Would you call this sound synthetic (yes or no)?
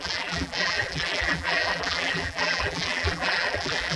yes